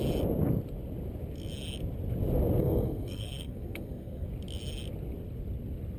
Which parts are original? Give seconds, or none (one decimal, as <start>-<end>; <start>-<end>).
0.0-2.6; 4.3-6.0